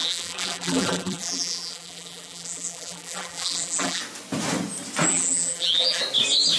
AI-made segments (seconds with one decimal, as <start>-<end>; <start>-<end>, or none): 0.0-4.0; 5.1-6.0